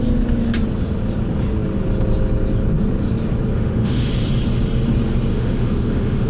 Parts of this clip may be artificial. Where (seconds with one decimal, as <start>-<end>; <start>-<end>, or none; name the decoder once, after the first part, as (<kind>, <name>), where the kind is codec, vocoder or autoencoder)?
3.5-4.1 (autoencoder, DAC-VAE); 5.3-6.3